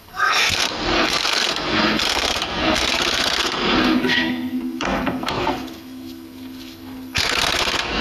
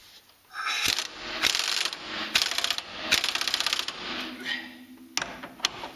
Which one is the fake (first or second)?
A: first